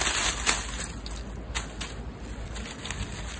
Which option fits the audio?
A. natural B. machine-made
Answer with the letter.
A